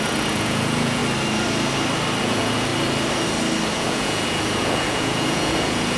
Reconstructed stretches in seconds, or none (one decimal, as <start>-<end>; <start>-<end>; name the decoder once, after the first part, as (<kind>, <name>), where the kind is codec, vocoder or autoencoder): 0.0-1.0 (vocoder, Vocos); 2.2-2.7; 3.7-6.0